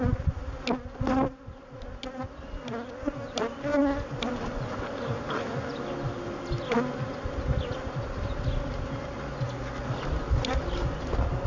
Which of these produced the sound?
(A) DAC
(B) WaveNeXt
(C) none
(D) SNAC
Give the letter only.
C